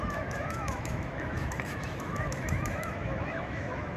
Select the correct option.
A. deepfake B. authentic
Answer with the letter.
A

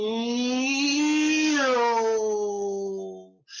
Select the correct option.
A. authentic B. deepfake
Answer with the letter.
A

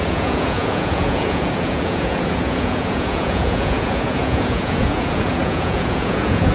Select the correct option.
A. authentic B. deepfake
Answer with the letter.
B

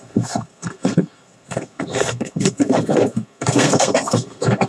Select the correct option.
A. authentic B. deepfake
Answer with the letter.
B